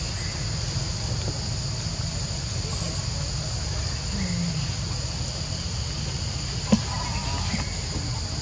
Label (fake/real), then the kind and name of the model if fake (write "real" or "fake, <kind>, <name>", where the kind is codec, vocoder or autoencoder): real